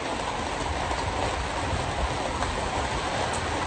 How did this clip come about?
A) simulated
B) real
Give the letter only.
B